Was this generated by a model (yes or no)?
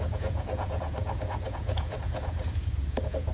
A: yes